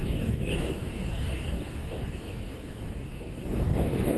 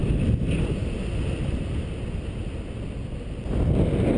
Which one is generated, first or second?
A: first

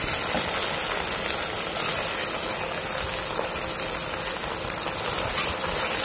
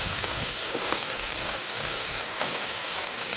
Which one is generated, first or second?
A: second